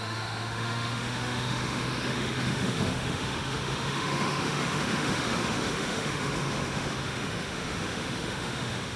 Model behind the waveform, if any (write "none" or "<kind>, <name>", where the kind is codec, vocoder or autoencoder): autoencoder, DAC-VAE